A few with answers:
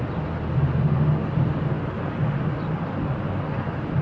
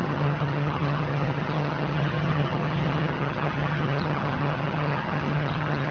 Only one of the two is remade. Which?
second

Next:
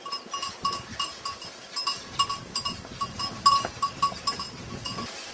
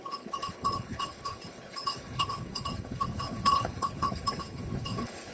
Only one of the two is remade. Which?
second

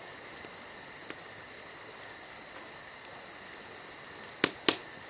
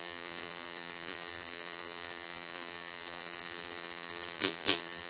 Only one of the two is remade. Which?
second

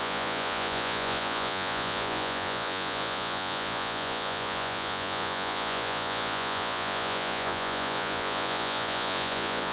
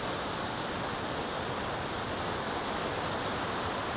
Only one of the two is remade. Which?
first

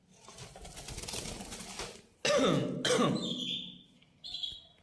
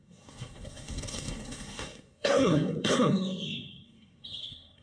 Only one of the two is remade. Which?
second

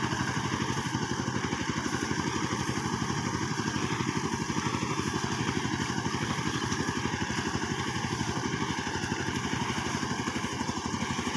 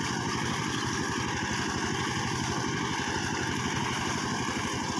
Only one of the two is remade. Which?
first